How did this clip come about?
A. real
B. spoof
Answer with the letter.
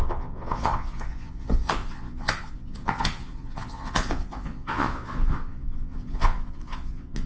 B